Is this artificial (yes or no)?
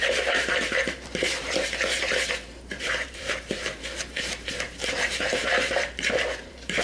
yes